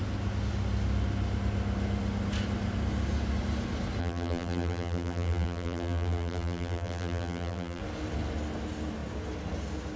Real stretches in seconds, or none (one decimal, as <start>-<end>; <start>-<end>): 0.0-4.0; 7.8-10.0